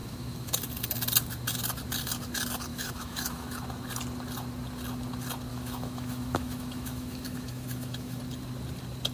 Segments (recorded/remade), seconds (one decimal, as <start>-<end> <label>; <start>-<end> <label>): 0.0-0.6 remade; 0.6-2.7 recorded; 2.7-3.5 remade; 3.5-5.5 recorded; 5.5-8.2 remade; 8.2-9.1 recorded